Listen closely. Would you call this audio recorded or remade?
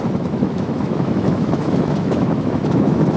remade